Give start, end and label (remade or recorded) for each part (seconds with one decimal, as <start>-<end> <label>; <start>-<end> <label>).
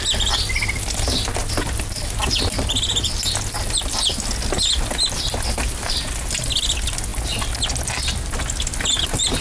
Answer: 0.0-9.4 recorded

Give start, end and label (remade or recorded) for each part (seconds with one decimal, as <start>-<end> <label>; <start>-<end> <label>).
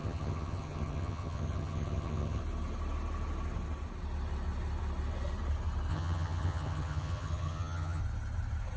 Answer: 0.0-2.4 remade; 2.4-5.9 recorded; 5.9-8.0 remade; 8.0-8.8 recorded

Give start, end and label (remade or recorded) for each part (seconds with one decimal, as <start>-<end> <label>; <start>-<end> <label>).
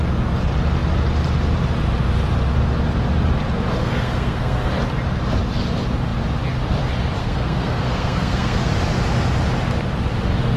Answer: 0.0-3.8 recorded; 3.8-4.7 remade; 4.7-7.2 recorded; 7.2-8.7 remade; 8.7-10.6 recorded